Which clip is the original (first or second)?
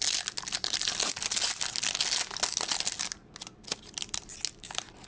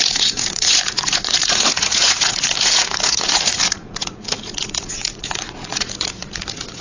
first